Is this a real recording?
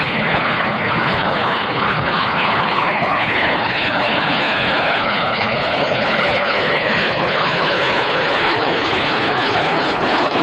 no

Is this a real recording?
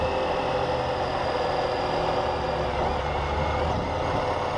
yes